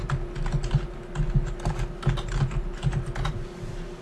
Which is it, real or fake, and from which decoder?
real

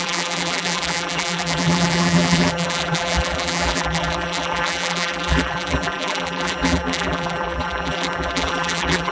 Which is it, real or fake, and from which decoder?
fake, vocoder, BigVGAN v2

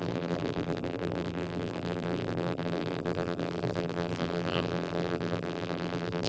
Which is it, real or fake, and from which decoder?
fake, vocoder, BigVGAN v2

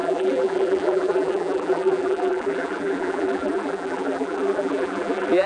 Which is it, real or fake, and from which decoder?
fake, vocoder, BigVGAN v2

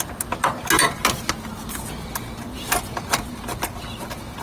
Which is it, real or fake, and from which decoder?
real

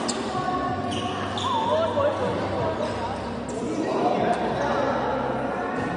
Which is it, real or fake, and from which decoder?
real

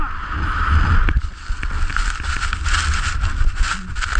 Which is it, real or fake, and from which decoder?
real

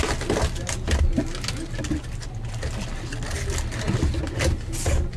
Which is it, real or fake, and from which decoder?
real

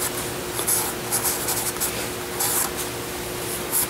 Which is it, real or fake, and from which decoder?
real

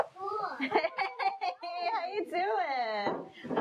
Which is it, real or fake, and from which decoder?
fake, vocoder, BigVGAN v2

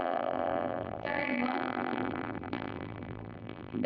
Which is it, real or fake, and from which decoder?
fake, vocoder, BigVGAN v2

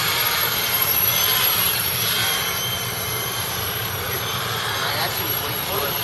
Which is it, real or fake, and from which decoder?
fake, vocoder, BigVGAN v2